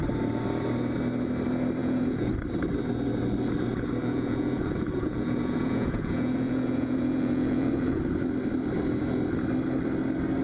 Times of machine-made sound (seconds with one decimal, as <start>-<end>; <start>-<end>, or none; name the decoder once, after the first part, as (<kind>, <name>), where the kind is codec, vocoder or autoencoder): 1.8-2.4 (vocoder, Vocos); 4.0-8.0